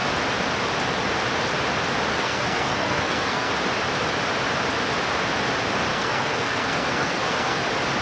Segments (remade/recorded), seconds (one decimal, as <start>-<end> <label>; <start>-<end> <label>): 0.0-2.1 recorded; 2.1-3.5 remade; 3.5-5.9 recorded; 5.9-7.6 remade; 7.6-8.0 recorded